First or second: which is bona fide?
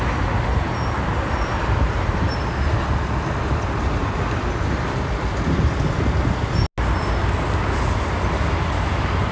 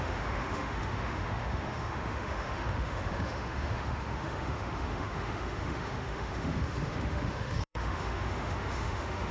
first